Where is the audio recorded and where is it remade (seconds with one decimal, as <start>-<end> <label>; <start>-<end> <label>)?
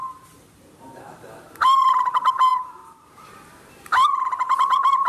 0.0-5.1 remade